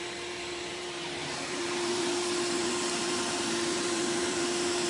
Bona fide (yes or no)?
no